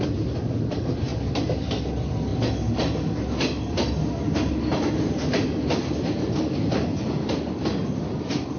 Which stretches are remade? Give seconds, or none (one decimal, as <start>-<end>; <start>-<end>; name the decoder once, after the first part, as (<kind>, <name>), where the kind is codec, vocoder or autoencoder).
none